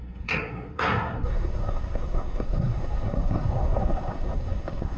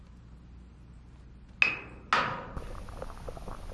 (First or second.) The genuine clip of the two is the second